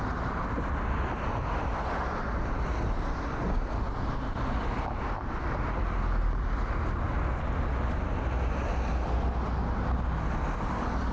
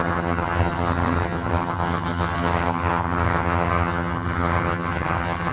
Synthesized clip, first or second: second